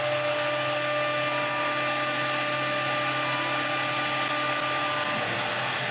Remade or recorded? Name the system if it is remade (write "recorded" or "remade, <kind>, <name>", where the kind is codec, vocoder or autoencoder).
recorded